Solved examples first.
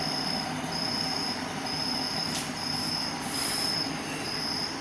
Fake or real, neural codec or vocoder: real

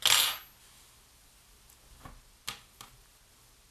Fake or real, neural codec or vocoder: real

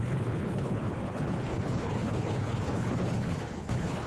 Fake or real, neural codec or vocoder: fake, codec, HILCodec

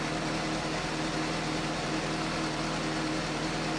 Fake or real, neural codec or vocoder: real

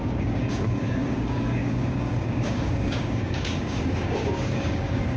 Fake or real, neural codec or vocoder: fake, codec, DAC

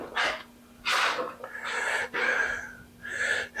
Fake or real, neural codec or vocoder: fake, vocoder, BigVGAN v2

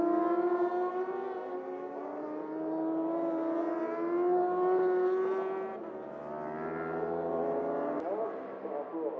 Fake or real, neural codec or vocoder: real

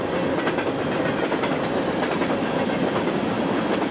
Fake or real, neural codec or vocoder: real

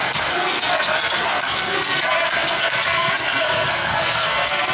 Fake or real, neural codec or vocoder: fake, codec, SNAC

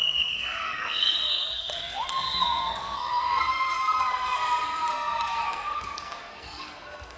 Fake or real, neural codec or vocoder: fake, codec, SNAC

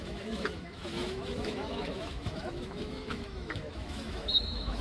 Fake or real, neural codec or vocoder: fake, autoencoder, DAC-VAE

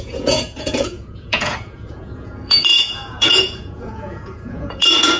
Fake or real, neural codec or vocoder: fake, vocoder, Vocos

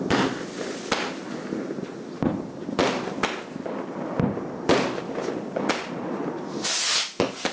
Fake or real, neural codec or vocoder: real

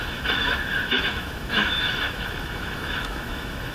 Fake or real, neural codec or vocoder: fake, autoencoder, DAC-VAE